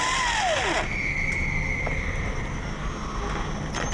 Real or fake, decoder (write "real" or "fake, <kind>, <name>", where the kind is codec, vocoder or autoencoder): real